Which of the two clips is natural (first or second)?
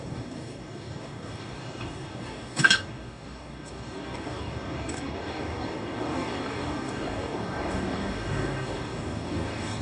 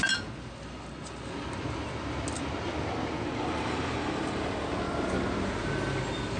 second